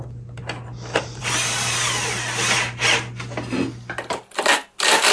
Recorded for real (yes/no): yes